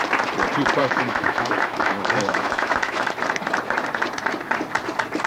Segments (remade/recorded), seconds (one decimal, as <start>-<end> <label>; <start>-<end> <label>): 0.0-0.8 recorded; 0.8-3.1 remade; 3.1-5.3 recorded